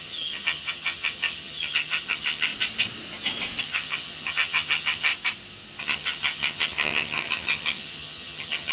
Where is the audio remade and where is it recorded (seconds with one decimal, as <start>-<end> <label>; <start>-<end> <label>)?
0.0-2.5 remade; 2.5-3.6 recorded; 3.6-5.1 remade; 5.1-5.8 recorded; 5.8-8.7 remade